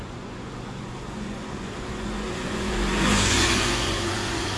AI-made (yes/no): yes